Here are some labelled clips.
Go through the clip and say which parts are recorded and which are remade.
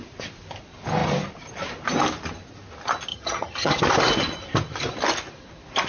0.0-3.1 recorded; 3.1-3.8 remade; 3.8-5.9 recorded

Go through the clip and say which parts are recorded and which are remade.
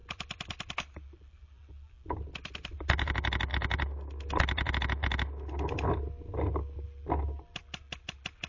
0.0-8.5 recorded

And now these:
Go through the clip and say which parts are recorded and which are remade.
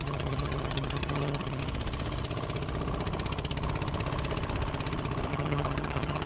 0.0-1.6 remade; 1.6-5.3 recorded; 5.3-6.3 remade